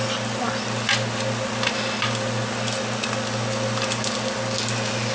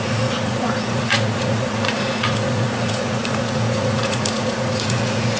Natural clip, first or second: first